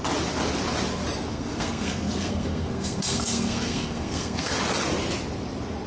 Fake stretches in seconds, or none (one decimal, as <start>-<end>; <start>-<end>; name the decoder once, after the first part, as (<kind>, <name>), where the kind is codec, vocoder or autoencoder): 1.3-4.5 (codec, SNAC)